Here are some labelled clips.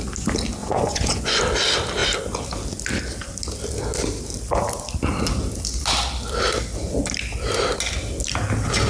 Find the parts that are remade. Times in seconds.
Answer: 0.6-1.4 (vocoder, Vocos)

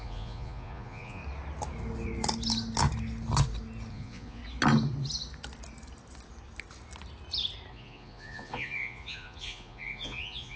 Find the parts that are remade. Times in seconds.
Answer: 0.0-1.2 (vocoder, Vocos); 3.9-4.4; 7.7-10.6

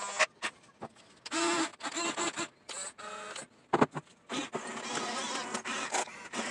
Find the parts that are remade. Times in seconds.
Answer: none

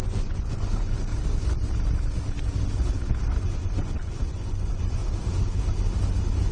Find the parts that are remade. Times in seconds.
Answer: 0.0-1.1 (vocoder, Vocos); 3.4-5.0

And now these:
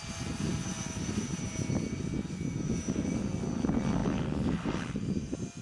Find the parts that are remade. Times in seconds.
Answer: none

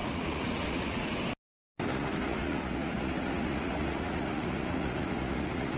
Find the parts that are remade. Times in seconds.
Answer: 0.0-1.2 (vocoder, Vocos); 1.9-5.8

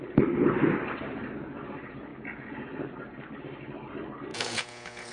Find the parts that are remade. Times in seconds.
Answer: 4.3-5.1 (vocoder, Vocos)

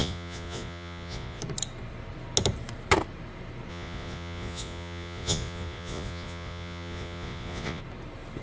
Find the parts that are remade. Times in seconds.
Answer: 0.0-1.4 (vocoder, Vocos); 3.7-7.8